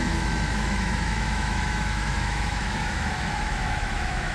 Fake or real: fake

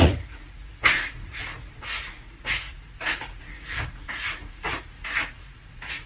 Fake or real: fake